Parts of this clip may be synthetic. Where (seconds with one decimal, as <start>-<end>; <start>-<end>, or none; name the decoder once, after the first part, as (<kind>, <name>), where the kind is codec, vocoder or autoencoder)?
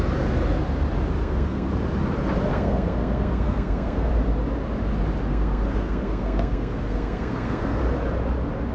1.2-1.7 (codec, SNAC); 2.5-4.1; 5.3-7.8